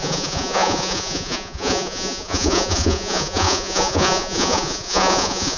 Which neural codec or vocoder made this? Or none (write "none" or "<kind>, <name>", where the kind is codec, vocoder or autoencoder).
vocoder, Vocos